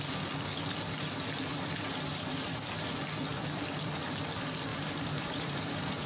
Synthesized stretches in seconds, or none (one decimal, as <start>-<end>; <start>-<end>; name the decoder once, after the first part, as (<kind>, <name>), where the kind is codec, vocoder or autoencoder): 1.5-2.9 (vocoder, BigVGAN v2); 4.7-6.1